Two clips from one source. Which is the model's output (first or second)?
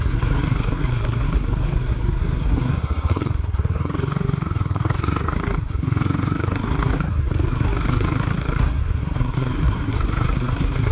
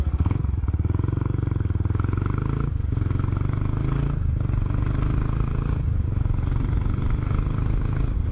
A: first